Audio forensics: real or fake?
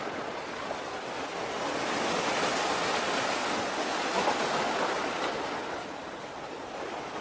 real